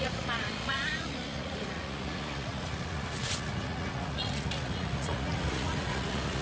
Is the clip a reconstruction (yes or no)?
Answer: yes